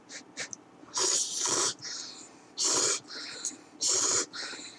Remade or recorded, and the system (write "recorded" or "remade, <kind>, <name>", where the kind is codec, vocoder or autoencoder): recorded